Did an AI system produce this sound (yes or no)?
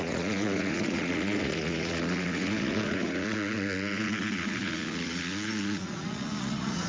yes